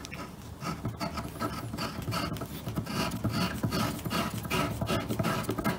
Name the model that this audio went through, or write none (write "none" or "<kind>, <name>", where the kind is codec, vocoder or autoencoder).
none